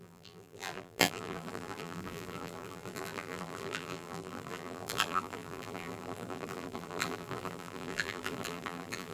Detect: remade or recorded remade